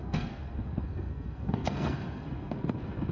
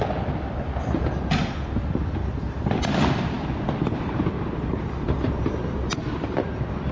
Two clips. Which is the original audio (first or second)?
second